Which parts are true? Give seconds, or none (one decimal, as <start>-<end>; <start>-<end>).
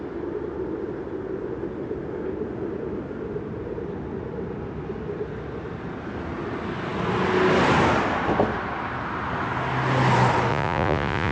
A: 0.0-10.5